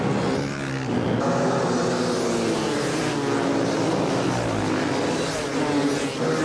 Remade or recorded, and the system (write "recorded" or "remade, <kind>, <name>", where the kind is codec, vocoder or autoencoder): recorded